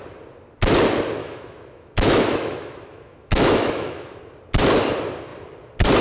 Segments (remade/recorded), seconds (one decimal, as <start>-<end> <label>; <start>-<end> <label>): 0.0-1.2 recorded; 1.2-4.2 remade; 4.2-6.0 recorded

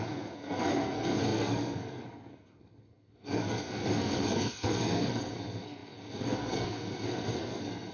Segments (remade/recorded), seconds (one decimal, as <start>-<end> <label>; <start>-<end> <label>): 0.0-7.9 remade

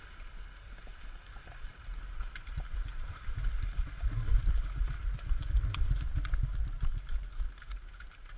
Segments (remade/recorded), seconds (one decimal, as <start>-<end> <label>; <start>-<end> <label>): 0.0-8.4 recorded

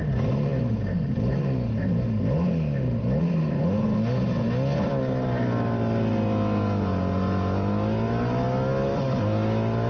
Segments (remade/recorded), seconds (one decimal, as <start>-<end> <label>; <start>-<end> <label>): 0.0-9.9 recorded

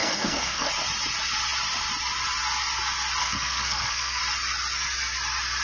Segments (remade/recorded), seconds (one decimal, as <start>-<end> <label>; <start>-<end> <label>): 0.0-0.7 remade; 0.7-3.2 recorded; 3.2-4.2 remade; 4.2-5.6 recorded